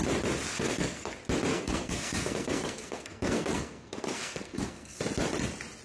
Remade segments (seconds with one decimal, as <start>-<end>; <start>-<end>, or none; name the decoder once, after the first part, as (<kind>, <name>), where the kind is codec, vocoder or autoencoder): 0.5-1.1 (codec, SNAC); 1.5-5.0